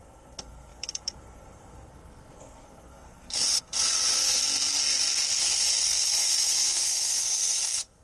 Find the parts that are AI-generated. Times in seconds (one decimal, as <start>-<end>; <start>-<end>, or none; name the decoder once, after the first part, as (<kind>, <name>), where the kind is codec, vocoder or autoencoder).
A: 0.0-4.4 (codec, SNAC); 5.4-8.0